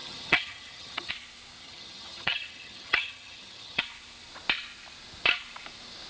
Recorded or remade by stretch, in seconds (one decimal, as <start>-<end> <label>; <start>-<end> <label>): 0.0-1.1 remade; 1.1-1.6 recorded; 1.6-3.8 remade; 3.8-6.1 recorded